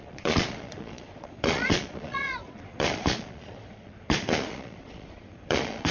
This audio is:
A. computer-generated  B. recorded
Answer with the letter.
A